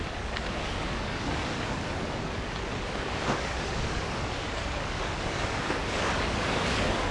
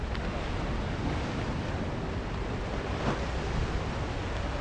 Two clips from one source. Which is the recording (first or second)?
second